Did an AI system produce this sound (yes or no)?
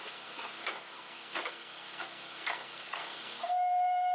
yes